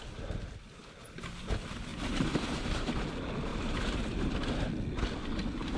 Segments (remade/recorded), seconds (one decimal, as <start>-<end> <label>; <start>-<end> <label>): 0.0-1.9 recorded; 1.9-2.9 remade; 2.9-3.5 recorded; 3.5-4.3 remade; 4.3-5.8 recorded